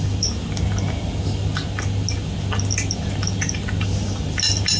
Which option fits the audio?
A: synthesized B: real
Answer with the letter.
B